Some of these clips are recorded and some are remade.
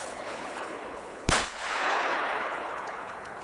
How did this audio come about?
remade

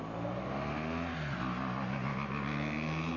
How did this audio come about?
recorded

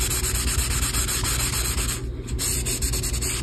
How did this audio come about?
recorded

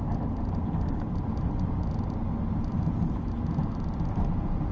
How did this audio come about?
recorded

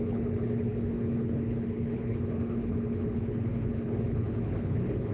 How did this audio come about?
remade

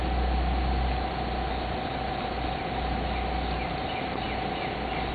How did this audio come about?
recorded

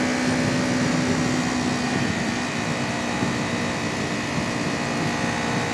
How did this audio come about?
recorded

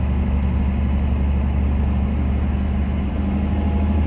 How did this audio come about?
recorded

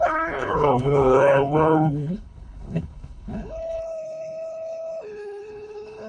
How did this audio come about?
remade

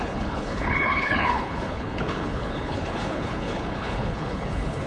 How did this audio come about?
remade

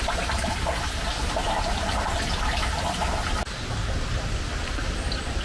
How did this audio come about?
recorded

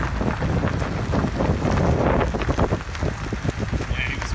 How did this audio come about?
recorded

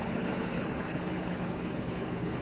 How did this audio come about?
remade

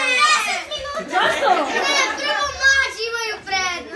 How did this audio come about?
recorded